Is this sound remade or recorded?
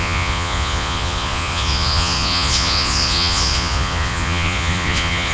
remade